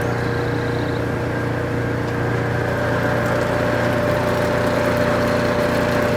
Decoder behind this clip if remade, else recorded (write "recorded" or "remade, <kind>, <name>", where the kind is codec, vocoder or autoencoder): recorded